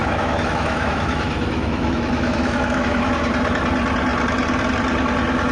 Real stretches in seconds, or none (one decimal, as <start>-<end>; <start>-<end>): 3.3-5.5